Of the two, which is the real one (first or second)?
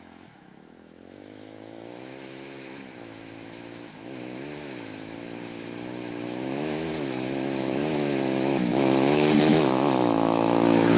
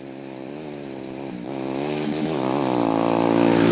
second